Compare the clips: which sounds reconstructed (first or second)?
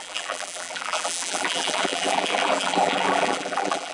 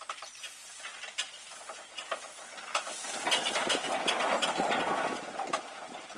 first